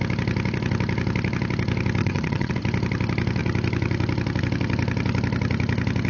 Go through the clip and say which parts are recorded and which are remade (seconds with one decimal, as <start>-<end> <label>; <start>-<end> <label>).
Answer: 0.0-2.0 recorded; 2.0-2.5 remade; 2.5-6.1 recorded